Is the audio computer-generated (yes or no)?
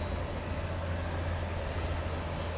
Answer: no